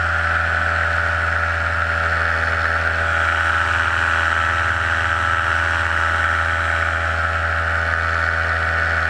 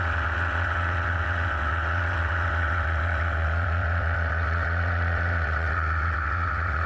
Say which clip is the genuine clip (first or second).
first